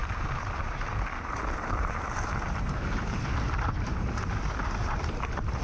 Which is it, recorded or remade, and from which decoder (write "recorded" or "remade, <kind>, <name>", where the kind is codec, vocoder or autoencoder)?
remade, vocoder, BigVGAN v2